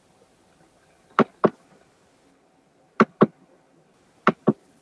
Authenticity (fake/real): real